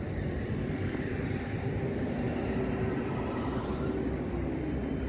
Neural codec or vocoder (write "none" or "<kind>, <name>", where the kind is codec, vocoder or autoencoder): vocoder, BigVGAN v2